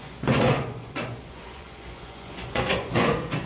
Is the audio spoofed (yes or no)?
yes